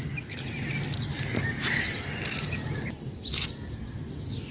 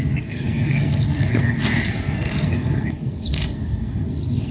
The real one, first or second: first